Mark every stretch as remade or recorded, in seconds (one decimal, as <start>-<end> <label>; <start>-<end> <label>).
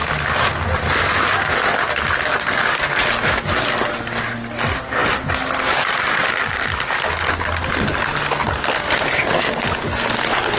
0.0-10.6 recorded